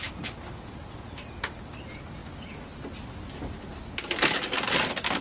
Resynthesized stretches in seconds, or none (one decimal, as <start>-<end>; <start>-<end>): none